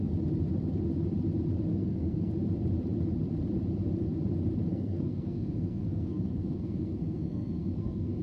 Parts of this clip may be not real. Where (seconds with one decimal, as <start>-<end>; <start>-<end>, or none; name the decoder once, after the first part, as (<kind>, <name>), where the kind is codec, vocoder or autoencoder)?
1.7-2.3 (codec, SNAC); 4.7-8.2